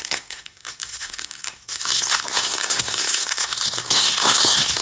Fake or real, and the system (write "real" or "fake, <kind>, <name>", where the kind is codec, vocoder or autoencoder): fake, codec, SNAC